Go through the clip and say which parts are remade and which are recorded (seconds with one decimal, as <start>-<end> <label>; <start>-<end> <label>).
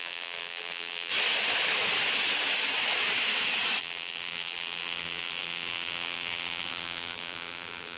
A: 0.0-1.1 remade; 1.1-3.8 recorded; 3.8-8.0 remade